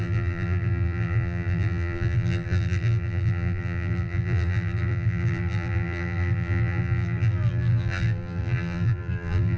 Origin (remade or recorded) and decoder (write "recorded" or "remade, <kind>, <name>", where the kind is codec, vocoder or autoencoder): remade, vocoder, BigVGAN v2